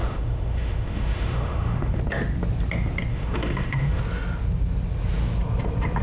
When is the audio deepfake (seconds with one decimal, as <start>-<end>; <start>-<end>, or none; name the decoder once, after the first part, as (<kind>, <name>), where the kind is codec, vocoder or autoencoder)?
0.0-2.0 (autoencoder, DAC-VAE); 3.1-4.0